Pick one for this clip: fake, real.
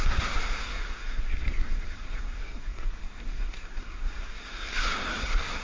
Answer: fake